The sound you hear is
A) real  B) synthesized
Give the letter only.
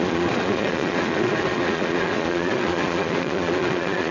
B